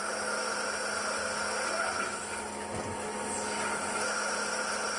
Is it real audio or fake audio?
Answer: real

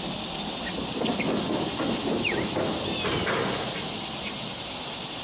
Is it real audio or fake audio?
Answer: real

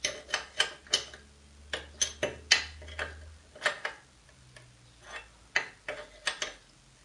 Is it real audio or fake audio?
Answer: real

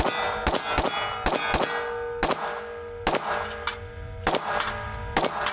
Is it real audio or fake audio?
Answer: real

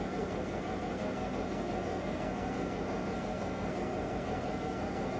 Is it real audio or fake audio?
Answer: fake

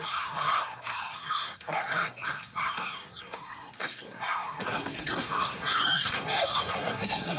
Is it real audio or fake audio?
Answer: fake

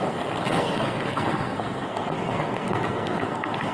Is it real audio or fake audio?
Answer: fake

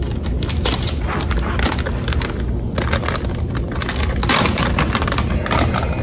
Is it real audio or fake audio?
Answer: real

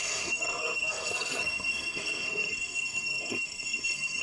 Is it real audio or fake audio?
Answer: fake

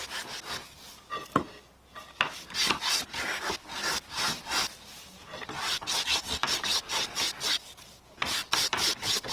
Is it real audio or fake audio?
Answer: real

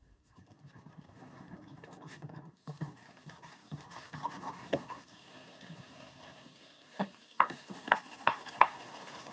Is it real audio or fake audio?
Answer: fake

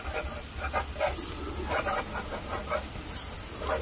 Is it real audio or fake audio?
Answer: real